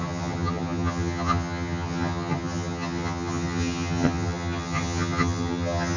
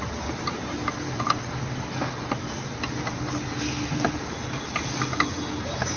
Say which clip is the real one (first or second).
second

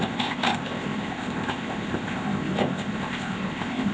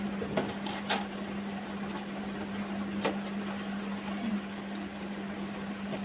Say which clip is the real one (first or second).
second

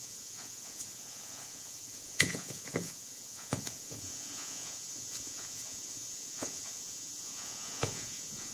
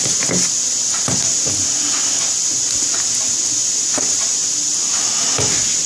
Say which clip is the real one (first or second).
second